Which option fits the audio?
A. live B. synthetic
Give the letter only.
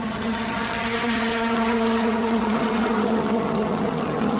B